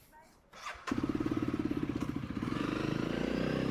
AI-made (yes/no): yes